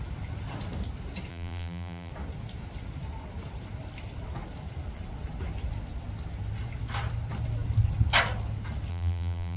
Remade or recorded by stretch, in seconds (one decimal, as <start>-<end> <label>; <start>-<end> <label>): 0.0-1.3 recorded; 1.3-2.1 remade; 2.1-8.9 recorded; 8.9-9.6 remade